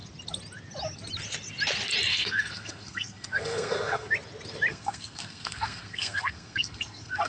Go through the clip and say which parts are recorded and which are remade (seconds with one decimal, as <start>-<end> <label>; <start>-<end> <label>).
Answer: 0.0-2.1 recorded; 2.1-4.1 remade; 4.1-4.7 recorded; 4.7-7.3 remade

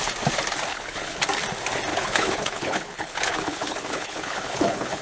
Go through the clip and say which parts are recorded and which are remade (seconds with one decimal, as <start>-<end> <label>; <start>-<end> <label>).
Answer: 0.0-0.7 recorded; 0.7-1.2 remade; 1.2-1.9 recorded; 1.9-5.0 remade

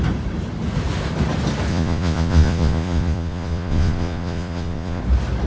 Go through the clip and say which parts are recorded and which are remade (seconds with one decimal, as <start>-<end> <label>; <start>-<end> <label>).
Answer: 0.0-1.7 recorded; 1.7-5.0 remade; 5.0-5.5 recorded

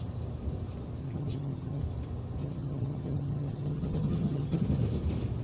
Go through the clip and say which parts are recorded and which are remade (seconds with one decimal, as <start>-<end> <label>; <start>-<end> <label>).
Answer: 0.0-1.0 recorded; 1.0-1.8 remade; 1.8-2.4 recorded; 2.4-4.6 remade; 4.6-5.4 recorded